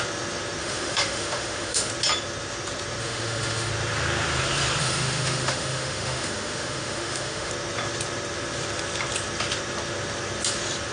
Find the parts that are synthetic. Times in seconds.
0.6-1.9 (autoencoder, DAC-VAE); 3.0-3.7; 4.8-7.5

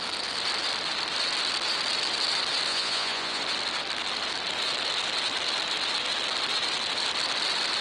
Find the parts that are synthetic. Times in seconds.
2.7-3.4 (vocoder, Vocos)

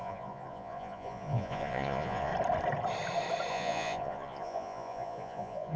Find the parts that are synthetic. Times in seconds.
0.0-2.3 (vocoder, Vocos); 3.5-5.8

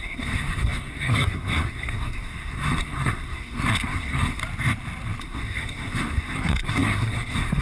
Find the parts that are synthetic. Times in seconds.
0.0-4.4 (codec, SNAC); 5.2-7.6

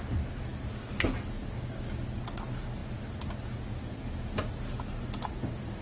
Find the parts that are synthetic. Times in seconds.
none

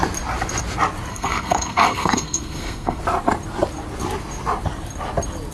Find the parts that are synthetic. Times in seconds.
1.1-3.0 (codec, SNAC)

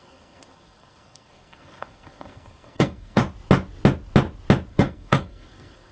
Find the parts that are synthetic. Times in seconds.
0.0-3.2 (codec, SNAC); 4.7-5.9

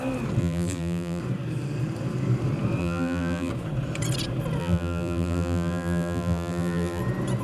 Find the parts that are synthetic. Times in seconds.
0.4-1.2 (vocoder, BigVGAN v2); 2.8-3.5; 4.6-7.0